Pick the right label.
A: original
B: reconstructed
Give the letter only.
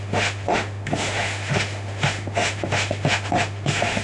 B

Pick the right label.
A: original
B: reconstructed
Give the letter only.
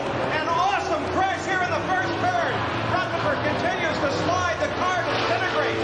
A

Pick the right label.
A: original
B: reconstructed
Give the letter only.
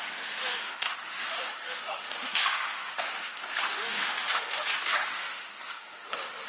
B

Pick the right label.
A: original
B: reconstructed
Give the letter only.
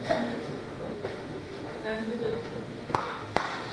B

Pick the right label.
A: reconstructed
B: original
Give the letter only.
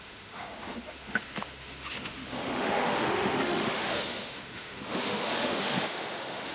A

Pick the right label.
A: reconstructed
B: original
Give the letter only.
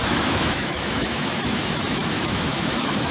A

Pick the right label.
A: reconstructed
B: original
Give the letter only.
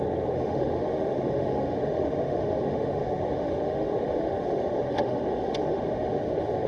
A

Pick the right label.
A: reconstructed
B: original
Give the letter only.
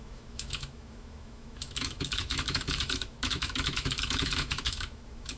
A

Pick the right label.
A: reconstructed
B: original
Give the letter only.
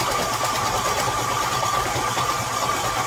B